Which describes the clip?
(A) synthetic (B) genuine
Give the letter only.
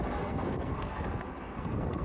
A